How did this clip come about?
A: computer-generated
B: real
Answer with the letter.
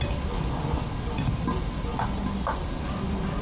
A